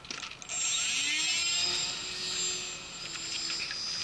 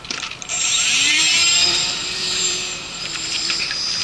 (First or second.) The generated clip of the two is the second